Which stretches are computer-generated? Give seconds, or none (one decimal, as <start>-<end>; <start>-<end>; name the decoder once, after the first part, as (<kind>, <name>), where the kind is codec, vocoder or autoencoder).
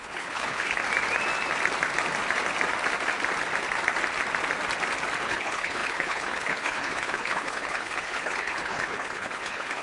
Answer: 0.0-0.8 (codec, HILCodec); 5.2-9.8